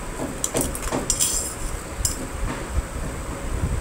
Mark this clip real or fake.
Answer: real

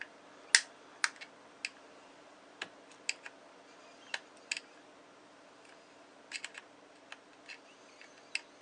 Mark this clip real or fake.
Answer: real